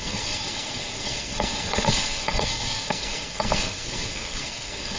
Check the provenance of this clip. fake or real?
fake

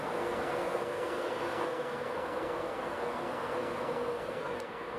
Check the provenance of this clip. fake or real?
fake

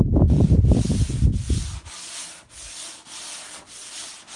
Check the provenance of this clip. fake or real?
real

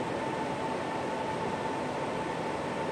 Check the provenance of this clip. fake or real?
real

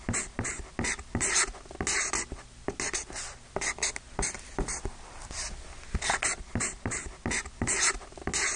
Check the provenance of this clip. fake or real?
real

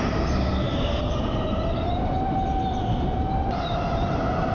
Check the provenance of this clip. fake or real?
real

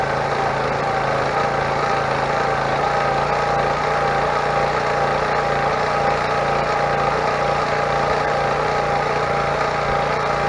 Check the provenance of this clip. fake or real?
real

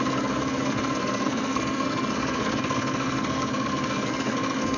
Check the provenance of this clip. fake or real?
fake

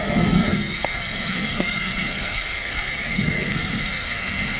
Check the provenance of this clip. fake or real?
fake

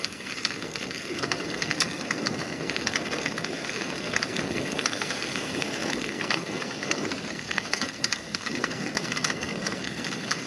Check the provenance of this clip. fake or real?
fake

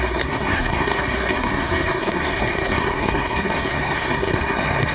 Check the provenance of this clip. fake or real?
fake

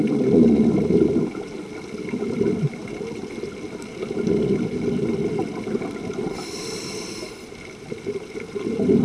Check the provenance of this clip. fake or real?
real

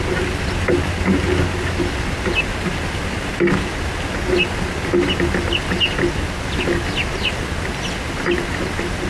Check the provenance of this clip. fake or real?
real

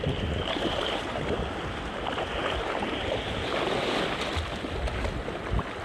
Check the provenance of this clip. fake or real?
real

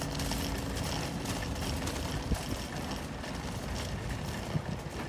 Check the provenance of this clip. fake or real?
real